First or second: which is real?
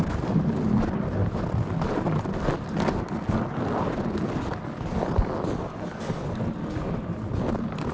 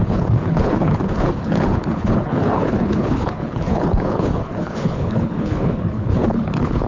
first